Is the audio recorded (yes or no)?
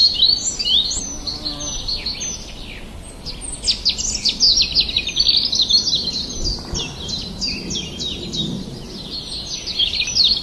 yes